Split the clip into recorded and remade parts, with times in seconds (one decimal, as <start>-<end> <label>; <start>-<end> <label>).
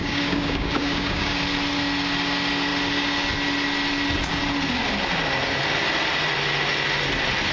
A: 0.0-1.3 remade; 1.3-7.5 recorded